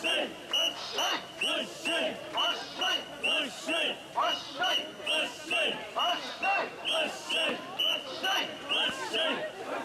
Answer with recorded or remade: recorded